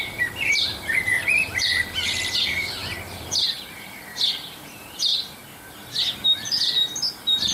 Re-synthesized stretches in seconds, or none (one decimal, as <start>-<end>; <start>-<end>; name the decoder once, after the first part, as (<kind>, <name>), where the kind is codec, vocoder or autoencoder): 0.0-5.1 (vocoder, BigVGAN v2); 6.0-7.5